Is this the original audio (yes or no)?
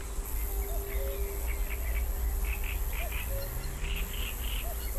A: yes